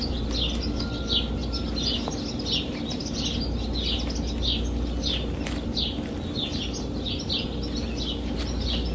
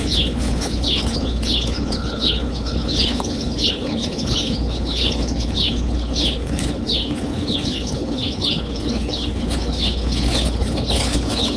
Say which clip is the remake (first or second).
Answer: second